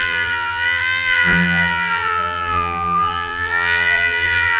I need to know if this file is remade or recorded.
remade